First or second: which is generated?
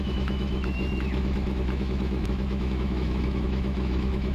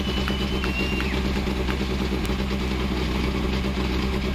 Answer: first